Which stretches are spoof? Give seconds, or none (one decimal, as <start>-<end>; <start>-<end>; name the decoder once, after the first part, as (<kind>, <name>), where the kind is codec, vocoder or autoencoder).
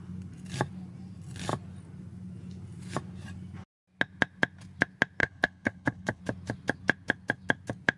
5.2-6.2 (codec, HILCodec)